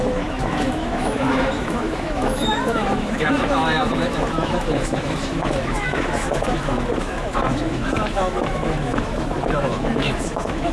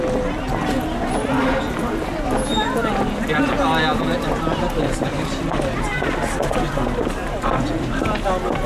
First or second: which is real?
second